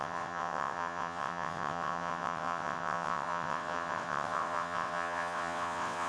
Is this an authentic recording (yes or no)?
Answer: no